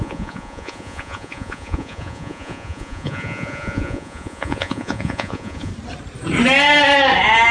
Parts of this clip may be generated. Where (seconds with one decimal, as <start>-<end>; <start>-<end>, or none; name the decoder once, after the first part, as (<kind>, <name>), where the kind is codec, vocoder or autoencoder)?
0.0-5.7 (vocoder, Vocos)